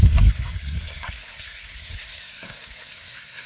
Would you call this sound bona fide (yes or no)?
no